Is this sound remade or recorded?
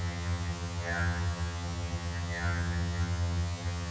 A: remade